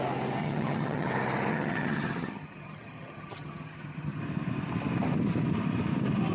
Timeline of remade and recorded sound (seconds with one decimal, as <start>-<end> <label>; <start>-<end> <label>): 0.0-0.4 recorded; 0.4-1.1 remade; 1.1-1.5 recorded; 1.5-4.2 remade; 4.2-6.3 recorded